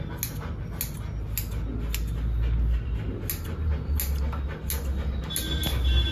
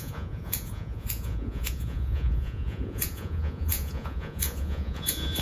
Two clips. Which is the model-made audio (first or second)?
second